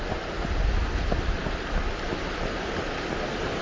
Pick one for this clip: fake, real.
real